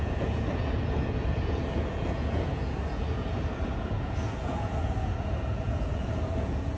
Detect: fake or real fake